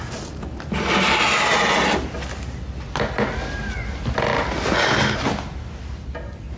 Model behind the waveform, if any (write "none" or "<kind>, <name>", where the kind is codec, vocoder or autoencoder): none